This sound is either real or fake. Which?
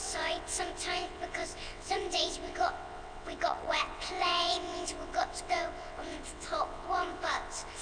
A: fake